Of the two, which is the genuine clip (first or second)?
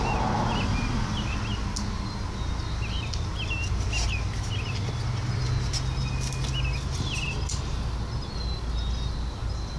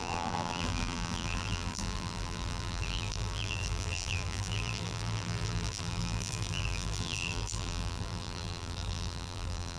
first